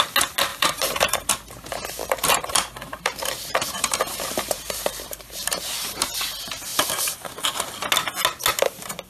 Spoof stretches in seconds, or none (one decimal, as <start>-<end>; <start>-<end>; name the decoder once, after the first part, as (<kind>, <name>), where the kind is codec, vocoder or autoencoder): 0.5-1.3 (vocoder, BigVGAN v2); 2.2-6.2